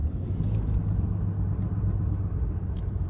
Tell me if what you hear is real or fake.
fake